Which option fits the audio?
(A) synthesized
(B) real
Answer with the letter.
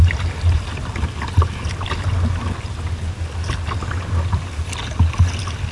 B